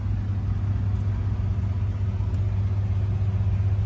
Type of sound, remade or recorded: recorded